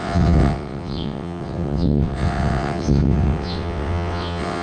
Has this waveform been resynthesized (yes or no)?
yes